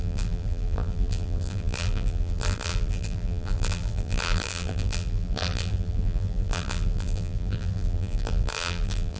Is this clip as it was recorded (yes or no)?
no